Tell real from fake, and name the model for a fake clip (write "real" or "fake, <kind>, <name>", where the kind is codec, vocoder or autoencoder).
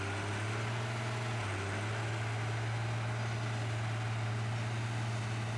real